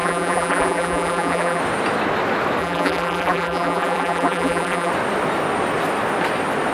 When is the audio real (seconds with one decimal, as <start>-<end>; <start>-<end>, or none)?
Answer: 1.6-2.6; 4.9-6.7